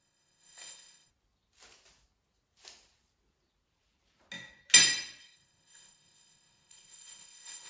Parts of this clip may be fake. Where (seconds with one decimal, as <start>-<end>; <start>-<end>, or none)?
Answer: 0.0-1.1; 5.2-7.7